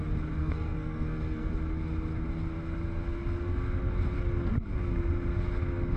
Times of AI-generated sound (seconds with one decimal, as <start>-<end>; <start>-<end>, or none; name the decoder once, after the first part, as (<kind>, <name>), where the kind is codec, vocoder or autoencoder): 0.4-1.5 (codec, SNAC)